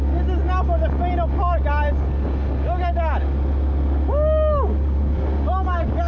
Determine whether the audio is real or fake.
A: real